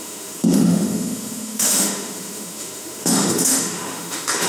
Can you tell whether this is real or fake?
fake